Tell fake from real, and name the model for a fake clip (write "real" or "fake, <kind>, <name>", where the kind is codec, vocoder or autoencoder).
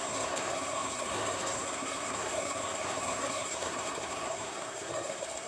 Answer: fake, codec, SNAC